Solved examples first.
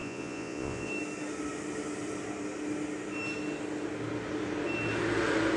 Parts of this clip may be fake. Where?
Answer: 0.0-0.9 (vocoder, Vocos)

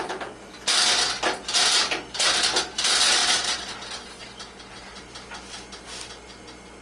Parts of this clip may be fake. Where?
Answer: none